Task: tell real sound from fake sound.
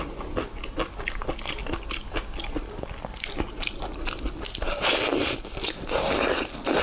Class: real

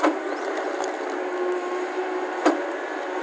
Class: real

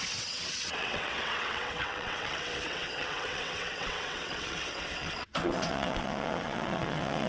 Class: fake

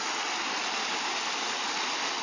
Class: real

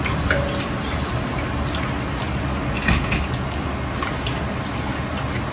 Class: real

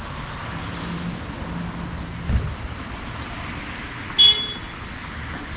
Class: real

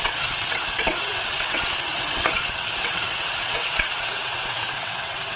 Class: fake